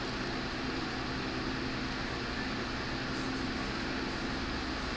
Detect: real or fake real